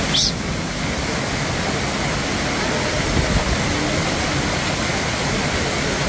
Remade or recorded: recorded